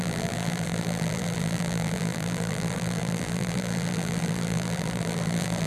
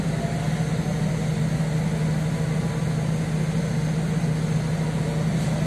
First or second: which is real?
second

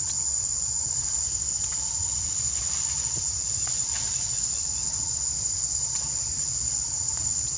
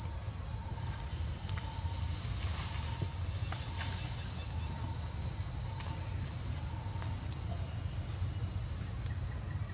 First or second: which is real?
second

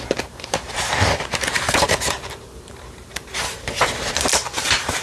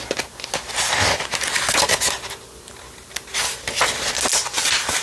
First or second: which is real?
second